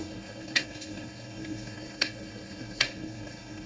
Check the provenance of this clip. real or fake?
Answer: fake